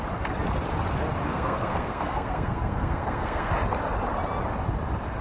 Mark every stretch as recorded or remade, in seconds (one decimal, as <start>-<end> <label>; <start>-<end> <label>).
0.0-1.3 recorded; 1.3-3.5 remade; 3.5-5.2 recorded